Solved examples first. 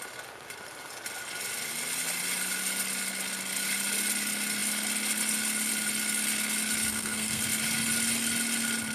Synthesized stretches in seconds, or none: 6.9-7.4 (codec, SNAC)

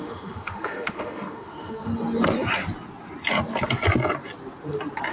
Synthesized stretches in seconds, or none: 0.0-1.9 (autoencoder, DAC-VAE)

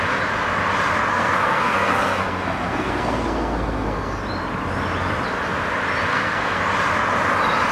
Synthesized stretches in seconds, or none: 1.1-4.2 (codec, SNAC); 6.1-6.6

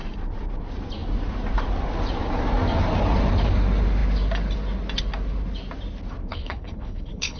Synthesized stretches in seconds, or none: 6.3-7.4 (codec, HILCodec)

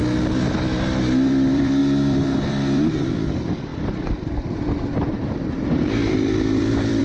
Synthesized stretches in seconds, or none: 1.3-7.0 (vocoder, BigVGAN v2)

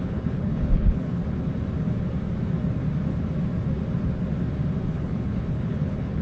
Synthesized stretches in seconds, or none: 0.0-1.2 (codec, HILCodec); 4.9-6.2

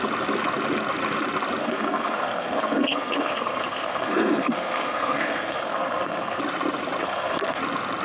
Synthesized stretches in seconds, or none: 1.6-6.4 (codec, SNAC); 7.0-7.6

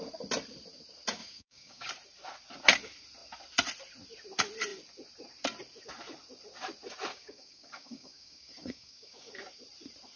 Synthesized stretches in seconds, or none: 1.2-1.9 (codec, DAC); 7.1-9.3